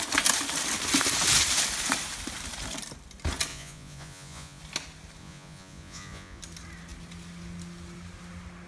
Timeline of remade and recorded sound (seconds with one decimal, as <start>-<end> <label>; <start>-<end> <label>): 0.0-3.5 recorded; 3.5-4.6 remade; 4.6-5.2 recorded; 5.2-6.4 remade; 6.4-8.7 recorded